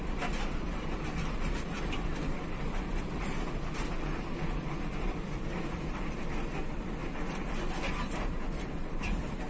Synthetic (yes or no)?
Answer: no